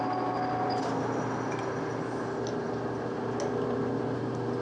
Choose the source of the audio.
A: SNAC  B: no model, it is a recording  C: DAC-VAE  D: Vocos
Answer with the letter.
B